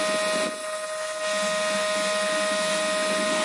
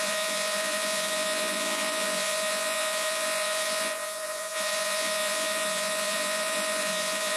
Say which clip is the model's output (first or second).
second